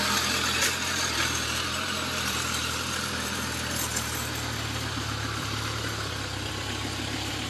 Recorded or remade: remade